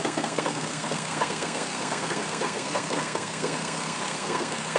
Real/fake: fake